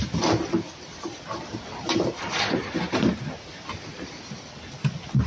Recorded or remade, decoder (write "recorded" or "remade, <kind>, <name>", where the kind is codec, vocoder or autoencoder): recorded